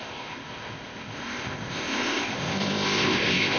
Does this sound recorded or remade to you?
remade